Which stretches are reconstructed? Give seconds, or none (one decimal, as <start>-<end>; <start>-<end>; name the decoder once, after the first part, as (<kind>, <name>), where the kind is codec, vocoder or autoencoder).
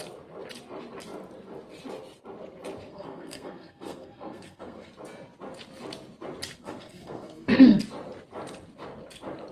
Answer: 2.9-4.9 (codec, SNAC); 6.6-7.8